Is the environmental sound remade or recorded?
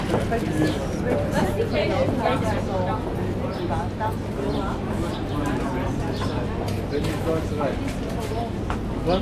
recorded